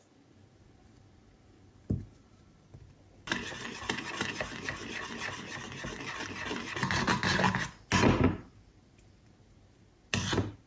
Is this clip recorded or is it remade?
recorded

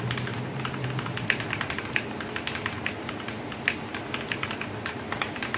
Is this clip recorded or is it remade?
recorded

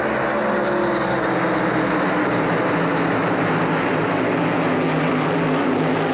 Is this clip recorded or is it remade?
recorded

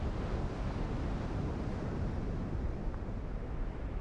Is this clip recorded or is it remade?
recorded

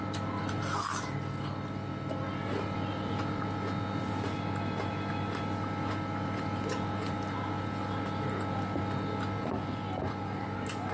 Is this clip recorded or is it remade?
recorded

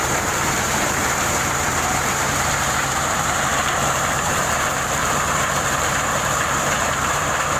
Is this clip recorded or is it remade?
remade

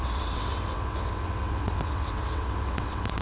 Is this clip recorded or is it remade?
remade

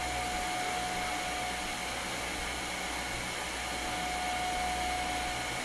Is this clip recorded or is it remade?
recorded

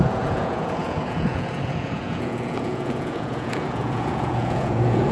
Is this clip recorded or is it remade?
remade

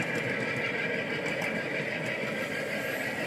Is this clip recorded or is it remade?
recorded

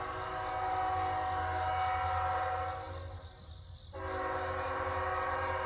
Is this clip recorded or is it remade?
recorded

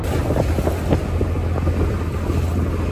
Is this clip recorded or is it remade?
recorded